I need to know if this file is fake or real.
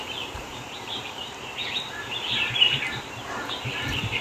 fake